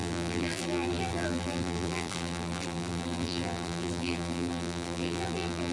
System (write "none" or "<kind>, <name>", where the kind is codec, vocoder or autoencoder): vocoder, BigVGAN v2